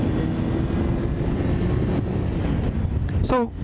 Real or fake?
real